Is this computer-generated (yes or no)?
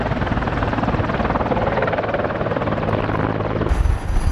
no